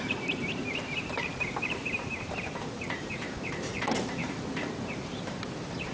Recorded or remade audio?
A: remade